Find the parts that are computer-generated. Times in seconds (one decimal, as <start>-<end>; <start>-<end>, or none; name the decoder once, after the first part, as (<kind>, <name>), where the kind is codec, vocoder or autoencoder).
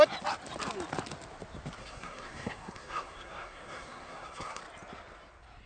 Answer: 1.8-4.6 (codec, SNAC)